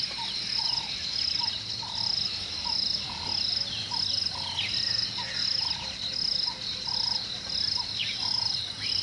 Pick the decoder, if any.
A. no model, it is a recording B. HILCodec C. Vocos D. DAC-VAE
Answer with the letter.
A